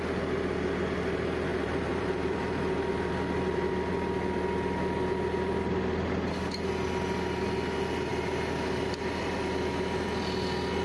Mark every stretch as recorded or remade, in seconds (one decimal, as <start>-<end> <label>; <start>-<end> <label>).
0.0-1.5 recorded; 1.5-3.9 remade; 3.9-10.8 recorded